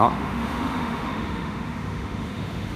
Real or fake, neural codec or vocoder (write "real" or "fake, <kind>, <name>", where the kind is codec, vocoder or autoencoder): fake, autoencoder, DAC-VAE